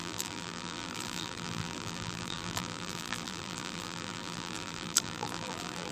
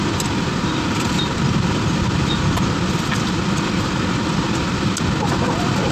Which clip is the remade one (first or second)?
first